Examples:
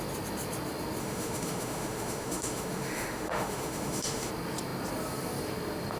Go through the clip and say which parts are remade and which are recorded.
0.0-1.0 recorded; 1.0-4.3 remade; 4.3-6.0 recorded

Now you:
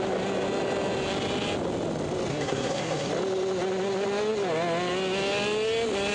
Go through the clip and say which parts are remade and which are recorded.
0.0-2.3 recorded; 2.3-3.1 remade; 3.1-6.1 recorded

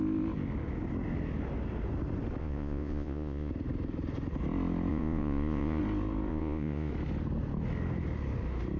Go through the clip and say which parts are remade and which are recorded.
0.0-2.4 recorded; 2.4-3.5 remade; 3.5-4.9 recorded; 4.9-5.8 remade; 5.8-6.3 recorded; 6.3-6.9 remade; 6.9-8.8 recorded

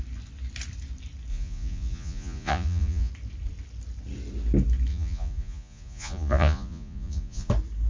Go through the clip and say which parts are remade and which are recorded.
0.0-1.3 recorded; 1.3-3.1 remade; 3.1-4.9 recorded; 4.9-7.5 remade; 7.5-7.9 recorded

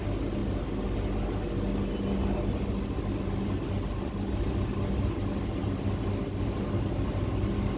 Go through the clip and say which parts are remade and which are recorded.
0.0-7.8 recorded